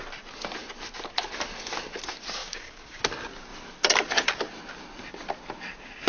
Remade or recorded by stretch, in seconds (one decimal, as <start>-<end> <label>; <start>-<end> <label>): 0.0-2.4 recorded; 2.4-3.0 remade; 3.0-6.1 recorded